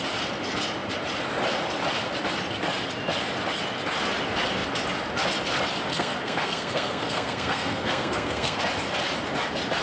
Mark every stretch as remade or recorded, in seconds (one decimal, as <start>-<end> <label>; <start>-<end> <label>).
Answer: 0.0-5.9 recorded; 5.9-8.6 remade; 8.6-9.8 recorded